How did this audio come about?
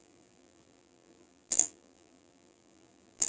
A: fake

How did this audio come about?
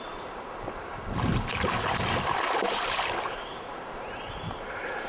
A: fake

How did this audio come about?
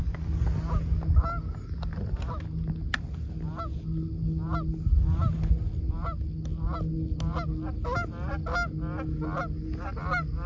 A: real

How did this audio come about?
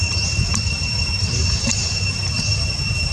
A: fake